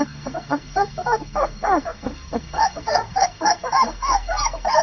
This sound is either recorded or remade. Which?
remade